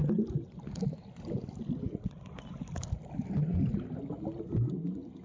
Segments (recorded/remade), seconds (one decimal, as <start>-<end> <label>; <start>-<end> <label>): 0.0-5.2 recorded